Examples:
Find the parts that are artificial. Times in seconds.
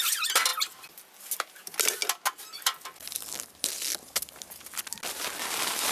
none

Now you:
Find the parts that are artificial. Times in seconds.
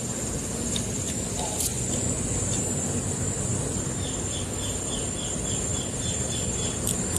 1.5-2.2 (vocoder, Vocos)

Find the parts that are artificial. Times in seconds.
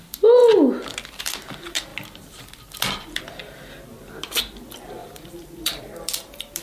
5.0-5.8 (vocoder, BigVGAN v2)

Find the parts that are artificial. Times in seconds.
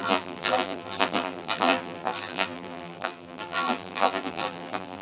0.0-5.0 (vocoder, BigVGAN v2)